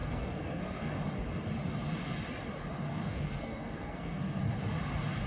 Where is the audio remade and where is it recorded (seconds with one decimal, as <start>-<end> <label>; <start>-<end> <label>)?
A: 0.0-1.0 remade; 1.0-2.9 recorded; 2.9-4.4 remade; 4.4-5.3 recorded